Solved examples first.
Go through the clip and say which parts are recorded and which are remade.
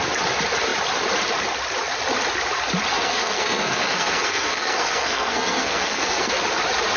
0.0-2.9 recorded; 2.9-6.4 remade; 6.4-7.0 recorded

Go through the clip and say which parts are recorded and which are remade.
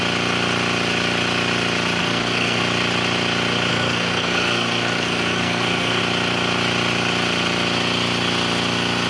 0.0-2.0 recorded; 2.0-2.6 remade; 2.6-3.7 recorded; 3.7-6.0 remade; 6.0-9.1 recorded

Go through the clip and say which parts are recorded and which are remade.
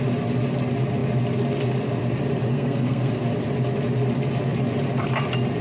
0.0-2.5 recorded; 2.5-3.1 remade; 3.1-5.6 recorded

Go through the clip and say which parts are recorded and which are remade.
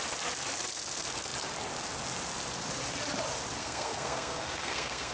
0.0-3.6 recorded; 3.6-5.1 remade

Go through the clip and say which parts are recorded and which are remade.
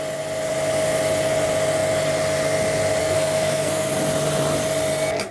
0.0-3.0 recorded; 3.0-3.9 remade; 3.9-5.3 recorded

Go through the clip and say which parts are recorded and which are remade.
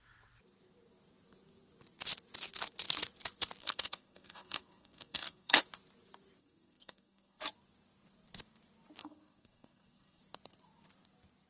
0.0-3.6 recorded; 3.6-5.6 remade; 5.6-6.4 recorded; 6.4-7.4 remade; 7.4-9.0 recorded; 9.0-10.2 remade; 10.2-11.5 recorded